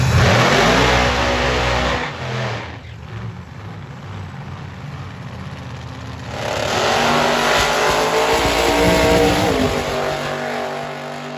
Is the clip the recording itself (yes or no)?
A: yes